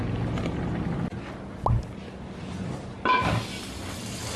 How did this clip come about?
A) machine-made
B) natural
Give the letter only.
B